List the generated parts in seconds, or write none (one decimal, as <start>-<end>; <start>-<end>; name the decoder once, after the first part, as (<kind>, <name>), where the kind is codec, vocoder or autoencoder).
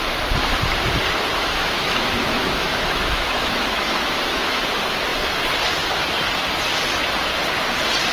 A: 1.3-4.6 (autoencoder, DAC-VAE)